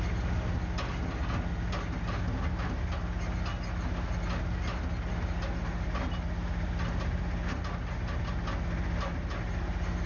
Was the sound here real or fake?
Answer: real